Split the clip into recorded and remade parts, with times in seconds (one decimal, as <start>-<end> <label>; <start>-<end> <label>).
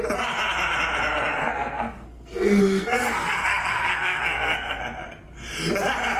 0.0-1.4 recorded; 1.4-4.8 remade; 4.8-6.2 recorded